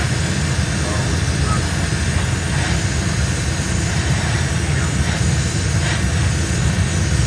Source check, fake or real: real